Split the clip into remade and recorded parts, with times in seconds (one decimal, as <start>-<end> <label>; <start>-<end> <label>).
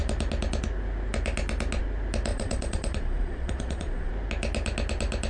0.0-2.3 recorded; 2.3-4.1 remade; 4.1-5.3 recorded